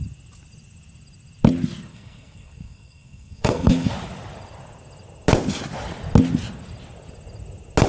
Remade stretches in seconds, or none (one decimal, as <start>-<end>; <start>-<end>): 1.9-3.9